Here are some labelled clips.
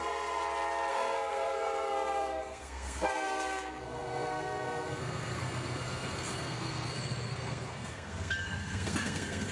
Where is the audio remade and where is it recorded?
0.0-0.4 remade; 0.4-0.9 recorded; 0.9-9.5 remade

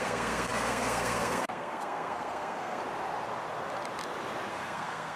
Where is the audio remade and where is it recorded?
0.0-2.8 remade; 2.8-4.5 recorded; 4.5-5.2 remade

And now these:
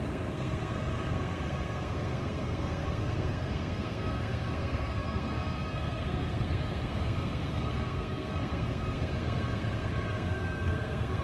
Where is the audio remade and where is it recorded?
0.0-11.2 remade

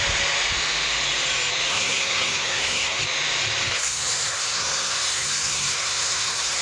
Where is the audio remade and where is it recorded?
0.0-1.7 recorded; 1.7-3.0 remade; 3.0-3.6 recorded; 3.6-6.6 remade

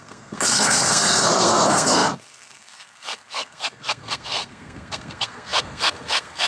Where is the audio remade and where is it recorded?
0.0-6.5 remade